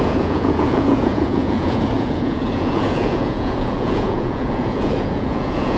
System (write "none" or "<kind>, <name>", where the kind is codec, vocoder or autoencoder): vocoder, Vocos